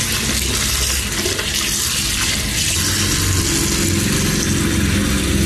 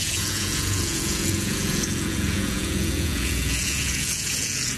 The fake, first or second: second